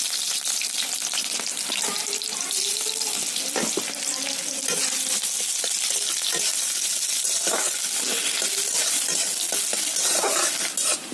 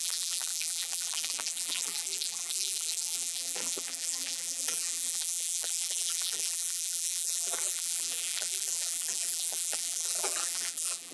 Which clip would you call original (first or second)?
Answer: first